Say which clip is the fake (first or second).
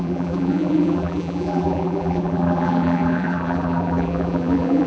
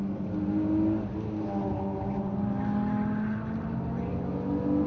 first